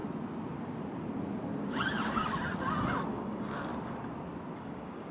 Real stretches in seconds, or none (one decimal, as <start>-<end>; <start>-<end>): 0.0-3.1; 3.7-4.6